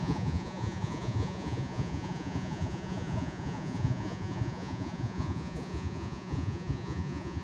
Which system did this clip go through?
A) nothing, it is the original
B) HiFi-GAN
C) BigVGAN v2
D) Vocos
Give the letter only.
D